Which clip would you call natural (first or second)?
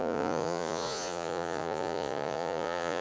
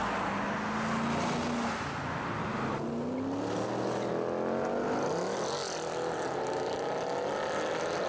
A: second